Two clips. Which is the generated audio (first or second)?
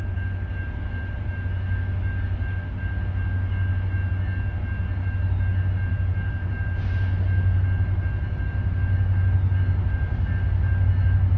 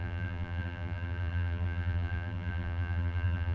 second